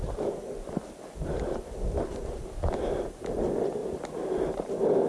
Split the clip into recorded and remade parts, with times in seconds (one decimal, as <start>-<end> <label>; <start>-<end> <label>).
0.0-3.8 remade; 3.8-5.1 recorded